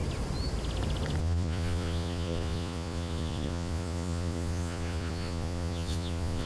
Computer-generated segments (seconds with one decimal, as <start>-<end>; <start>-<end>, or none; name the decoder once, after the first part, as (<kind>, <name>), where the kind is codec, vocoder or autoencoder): 1.2-6.5 (vocoder, Vocos)